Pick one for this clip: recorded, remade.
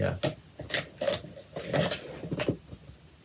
recorded